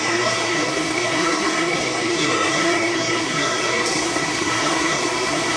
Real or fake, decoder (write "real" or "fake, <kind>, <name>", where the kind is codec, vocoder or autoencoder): fake, codec, SNAC